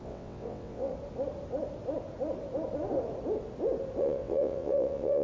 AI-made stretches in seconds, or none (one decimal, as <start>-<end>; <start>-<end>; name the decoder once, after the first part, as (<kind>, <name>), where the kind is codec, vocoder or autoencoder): 0.0-0.9 (vocoder, WaveNeXt); 4.0-5.2